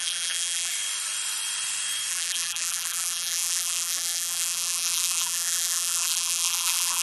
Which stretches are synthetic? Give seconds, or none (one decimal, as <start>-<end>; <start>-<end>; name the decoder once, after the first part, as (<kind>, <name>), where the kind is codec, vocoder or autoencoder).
0.0-0.7 (vocoder, BigVGAN v2); 2.1-7.0